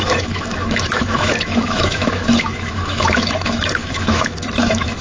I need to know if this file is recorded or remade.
remade